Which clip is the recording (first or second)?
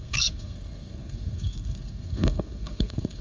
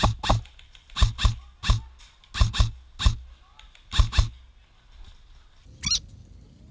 second